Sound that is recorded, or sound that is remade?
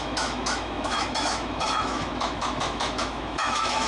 remade